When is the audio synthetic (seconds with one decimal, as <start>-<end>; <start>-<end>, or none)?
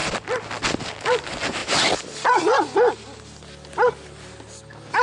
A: none